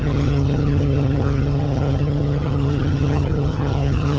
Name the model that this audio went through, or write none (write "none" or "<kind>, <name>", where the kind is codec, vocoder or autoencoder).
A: vocoder, HiFi-GAN